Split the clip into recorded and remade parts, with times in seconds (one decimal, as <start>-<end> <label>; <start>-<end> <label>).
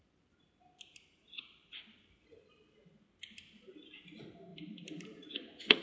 0.0-4.5 recorded; 4.5-5.8 remade